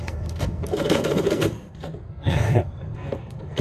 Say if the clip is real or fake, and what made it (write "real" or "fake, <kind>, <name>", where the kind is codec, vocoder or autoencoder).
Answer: fake, codec, SNAC